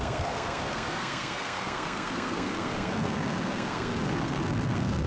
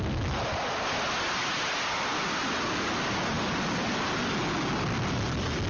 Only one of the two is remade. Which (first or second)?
first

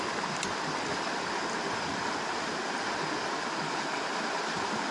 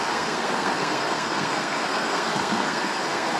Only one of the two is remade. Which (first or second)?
second